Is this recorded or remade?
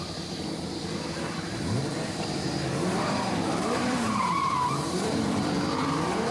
remade